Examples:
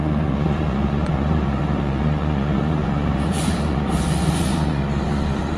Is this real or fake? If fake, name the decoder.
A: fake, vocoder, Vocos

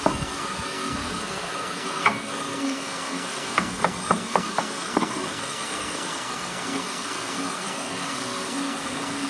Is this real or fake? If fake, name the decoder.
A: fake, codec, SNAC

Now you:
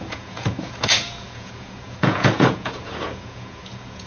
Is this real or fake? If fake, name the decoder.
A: fake, vocoder, Vocos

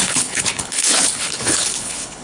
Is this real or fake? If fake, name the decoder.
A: fake, codec, HILCodec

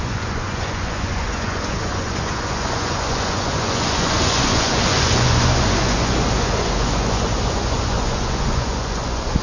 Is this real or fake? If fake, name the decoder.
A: fake, vocoder, Vocos